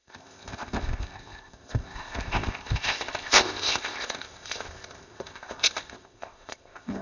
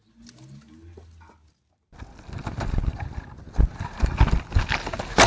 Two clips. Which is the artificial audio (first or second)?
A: first